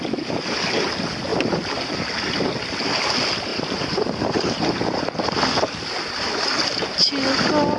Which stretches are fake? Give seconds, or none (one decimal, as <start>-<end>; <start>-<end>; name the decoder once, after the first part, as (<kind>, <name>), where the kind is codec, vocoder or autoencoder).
1.3-2.3 (vocoder, BigVGAN v2); 3.5-5.0